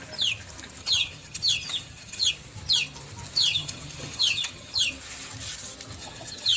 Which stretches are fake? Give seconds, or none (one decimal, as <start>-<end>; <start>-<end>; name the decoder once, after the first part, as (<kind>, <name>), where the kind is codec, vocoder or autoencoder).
0.8-2.3 (vocoder, HiFi-GAN); 3.4-4.9; 6.0-6.6